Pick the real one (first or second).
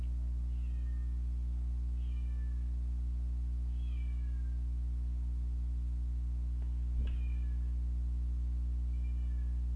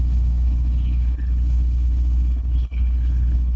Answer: first